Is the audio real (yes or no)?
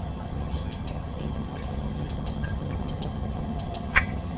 no